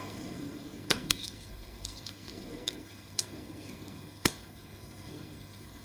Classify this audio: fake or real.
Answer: fake